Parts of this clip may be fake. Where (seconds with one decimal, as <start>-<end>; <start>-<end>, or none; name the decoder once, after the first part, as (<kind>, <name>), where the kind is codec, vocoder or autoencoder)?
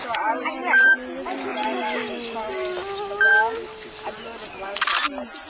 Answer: 1.5-4.8 (vocoder, BigVGAN v2)